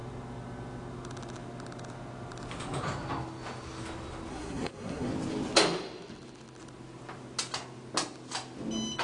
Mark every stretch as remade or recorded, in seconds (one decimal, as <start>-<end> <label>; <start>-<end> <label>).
0.0-4.3 recorded; 4.3-5.1 remade; 5.1-9.0 recorded